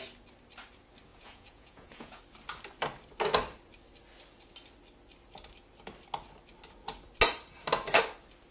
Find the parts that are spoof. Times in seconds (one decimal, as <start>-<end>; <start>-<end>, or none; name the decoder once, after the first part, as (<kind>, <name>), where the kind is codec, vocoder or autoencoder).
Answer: 1.1-2.2 (vocoder, Vocos)